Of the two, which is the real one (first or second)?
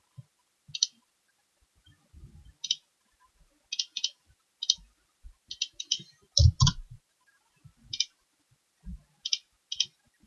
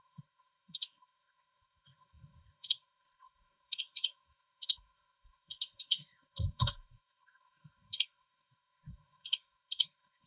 first